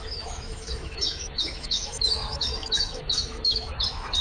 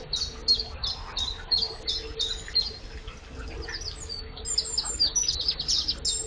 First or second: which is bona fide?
second